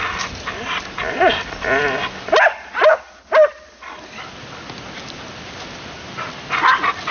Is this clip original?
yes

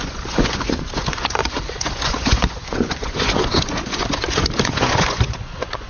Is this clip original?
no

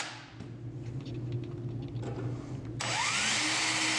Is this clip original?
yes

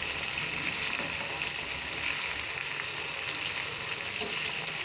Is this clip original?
yes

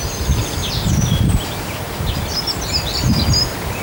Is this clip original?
yes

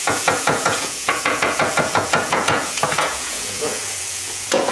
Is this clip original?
no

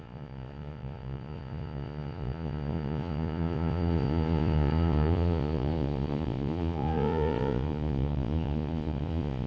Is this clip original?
no